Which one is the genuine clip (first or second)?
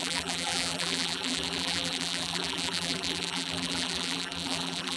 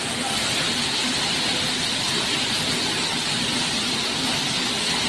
second